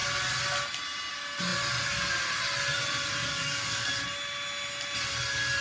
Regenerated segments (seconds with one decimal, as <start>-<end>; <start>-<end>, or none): 3.2-3.9